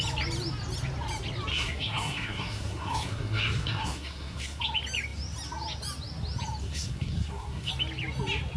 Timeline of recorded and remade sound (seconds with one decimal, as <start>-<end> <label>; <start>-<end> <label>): 0.0-1.5 recorded; 1.5-4.6 remade; 4.6-6.6 recorded; 6.6-7.7 remade; 7.7-8.6 recorded